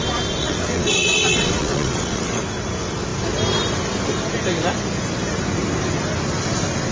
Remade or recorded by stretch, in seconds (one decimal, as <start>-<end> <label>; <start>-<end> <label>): 0.0-0.4 recorded; 0.4-2.4 remade; 2.4-6.9 recorded